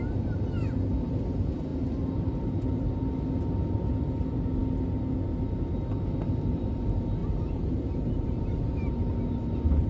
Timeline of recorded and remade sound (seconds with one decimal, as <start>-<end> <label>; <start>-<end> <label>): 0.0-7.2 recorded; 7.2-9.1 remade; 9.1-9.9 recorded